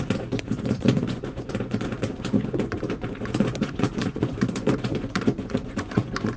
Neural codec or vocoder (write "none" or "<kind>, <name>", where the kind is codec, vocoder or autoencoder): vocoder, Vocos